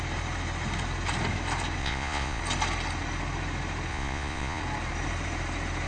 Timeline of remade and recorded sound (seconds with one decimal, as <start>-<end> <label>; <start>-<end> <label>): 0.0-1.8 recorded; 1.8-2.4 remade; 2.4-3.9 recorded; 3.9-4.6 remade; 4.6-5.9 recorded